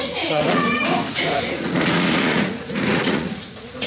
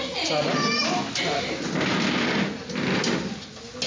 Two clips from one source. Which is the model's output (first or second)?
first